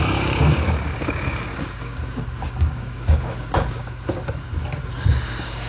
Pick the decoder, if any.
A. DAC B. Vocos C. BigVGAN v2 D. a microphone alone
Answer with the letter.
A